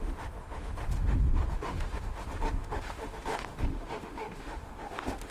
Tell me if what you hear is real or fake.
fake